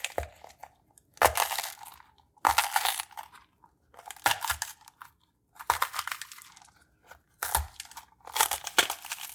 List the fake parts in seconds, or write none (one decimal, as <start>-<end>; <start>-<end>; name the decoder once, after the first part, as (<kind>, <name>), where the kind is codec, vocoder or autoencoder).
none